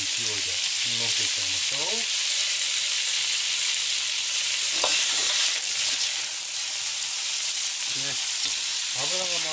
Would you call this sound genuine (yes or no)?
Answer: no